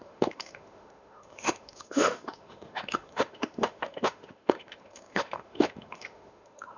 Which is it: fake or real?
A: fake